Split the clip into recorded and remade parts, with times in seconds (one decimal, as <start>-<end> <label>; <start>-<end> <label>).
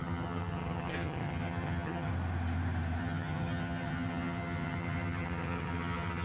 0.0-2.1 remade; 2.1-3.0 recorded; 3.0-6.2 remade